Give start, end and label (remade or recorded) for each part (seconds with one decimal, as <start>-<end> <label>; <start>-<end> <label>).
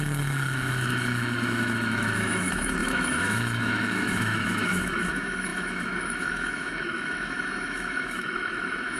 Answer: 0.0-9.0 remade